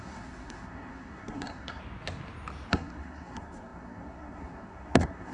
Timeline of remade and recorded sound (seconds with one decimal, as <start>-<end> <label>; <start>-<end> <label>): 0.0-1.8 remade; 1.8-2.7 recorded; 2.7-5.3 remade